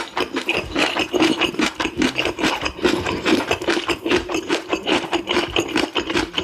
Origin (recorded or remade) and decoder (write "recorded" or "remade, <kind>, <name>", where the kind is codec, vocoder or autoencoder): remade, vocoder, BigVGAN v2